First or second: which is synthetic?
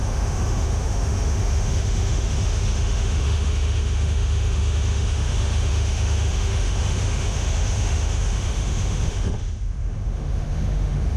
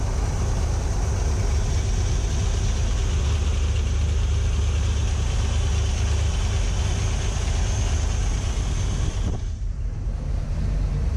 first